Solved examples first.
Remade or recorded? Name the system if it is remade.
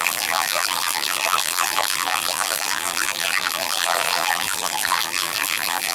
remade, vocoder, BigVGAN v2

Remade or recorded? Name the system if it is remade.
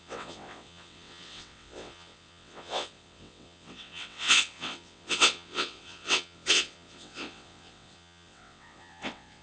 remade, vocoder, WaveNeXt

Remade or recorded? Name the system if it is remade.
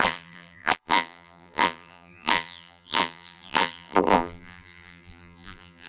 remade, vocoder, BigVGAN v2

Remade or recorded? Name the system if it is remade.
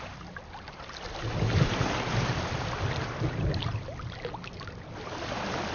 recorded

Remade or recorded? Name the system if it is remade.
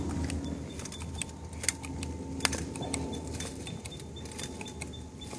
recorded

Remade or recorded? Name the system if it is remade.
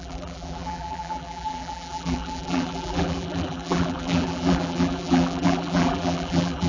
remade, vocoder, BigVGAN v2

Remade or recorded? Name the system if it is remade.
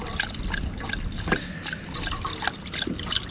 recorded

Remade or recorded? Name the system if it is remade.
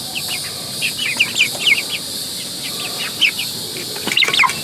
recorded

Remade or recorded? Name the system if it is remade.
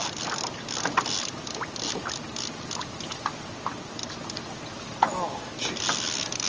recorded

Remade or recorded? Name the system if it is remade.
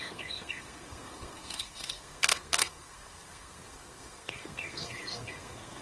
remade, codec, SNAC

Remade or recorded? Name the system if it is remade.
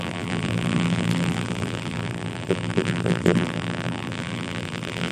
remade, vocoder, BigVGAN v2